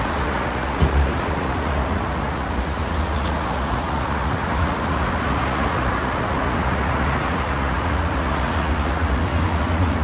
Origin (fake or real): fake